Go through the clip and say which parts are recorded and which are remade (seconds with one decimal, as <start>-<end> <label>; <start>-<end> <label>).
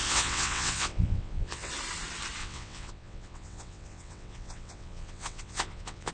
0.0-1.7 remade; 1.7-2.4 recorded; 2.4-6.1 remade